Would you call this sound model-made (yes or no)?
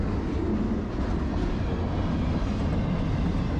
no